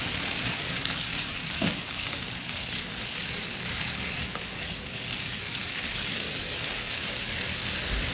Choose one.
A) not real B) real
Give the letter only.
A